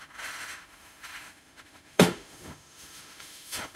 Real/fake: fake